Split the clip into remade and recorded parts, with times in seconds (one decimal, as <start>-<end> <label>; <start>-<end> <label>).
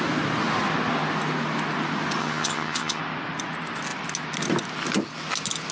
0.0-2.2 recorded; 2.2-3.0 remade; 3.0-5.7 recorded